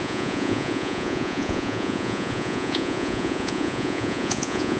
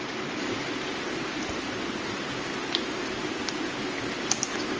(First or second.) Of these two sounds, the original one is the second